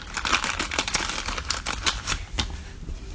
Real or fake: real